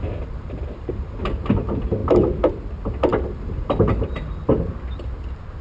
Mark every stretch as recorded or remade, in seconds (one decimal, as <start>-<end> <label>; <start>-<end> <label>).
0.0-1.3 remade; 1.3-3.1 recorded; 3.1-4.5 remade; 4.5-5.6 recorded